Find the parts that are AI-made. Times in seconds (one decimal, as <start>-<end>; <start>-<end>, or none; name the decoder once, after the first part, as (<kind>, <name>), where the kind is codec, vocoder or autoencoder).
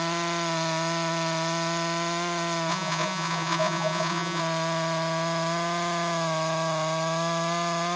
2.7-4.4 (vocoder, Vocos)